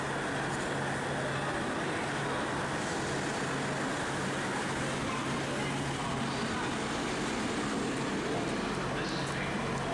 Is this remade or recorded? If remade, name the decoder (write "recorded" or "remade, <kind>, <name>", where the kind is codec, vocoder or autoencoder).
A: recorded